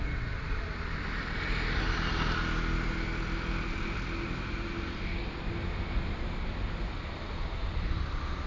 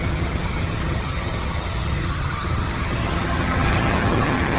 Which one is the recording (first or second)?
first